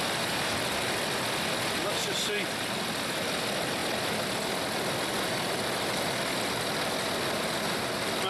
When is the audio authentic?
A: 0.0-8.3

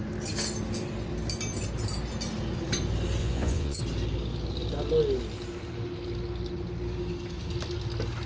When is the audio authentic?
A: 0.0-3.2; 3.8-8.3

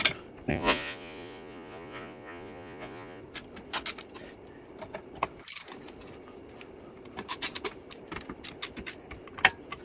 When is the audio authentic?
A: 0.0-0.5; 3.2-9.8

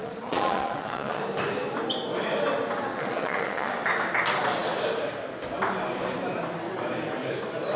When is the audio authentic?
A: 1.2-2.9; 3.7-7.8

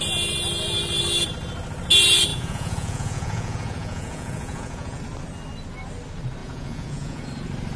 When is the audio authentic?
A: 0.0-2.3; 5.0-6.4; 7.2-7.8

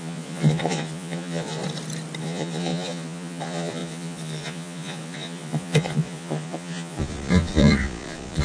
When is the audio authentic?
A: 1.6-2.2

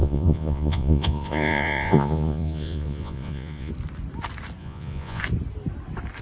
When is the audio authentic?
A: 3.7-4.6; 5.2-6.2

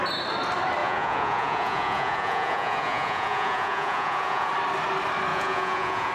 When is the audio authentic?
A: 0.0-0.8; 4.5-5.3